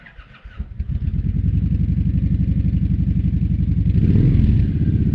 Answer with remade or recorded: recorded